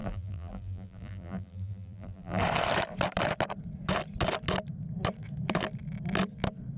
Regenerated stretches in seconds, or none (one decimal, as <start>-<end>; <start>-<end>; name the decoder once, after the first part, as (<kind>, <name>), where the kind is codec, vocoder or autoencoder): 0.0-2.4 (vocoder, BigVGAN v2)